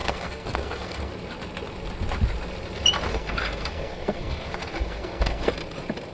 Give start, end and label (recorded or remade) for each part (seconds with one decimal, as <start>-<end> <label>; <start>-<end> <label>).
0.0-1.1 remade; 1.1-3.1 recorded; 3.1-5.5 remade; 5.5-6.1 recorded